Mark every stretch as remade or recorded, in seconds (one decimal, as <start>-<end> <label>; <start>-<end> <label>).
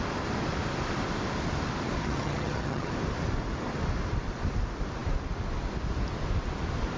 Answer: 0.0-2.0 recorded; 2.0-2.9 remade; 2.9-7.0 recorded